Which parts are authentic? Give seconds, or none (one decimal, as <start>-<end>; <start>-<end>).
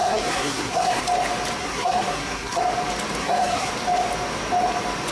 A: 1.0-1.6; 2.6-3.2; 3.7-5.1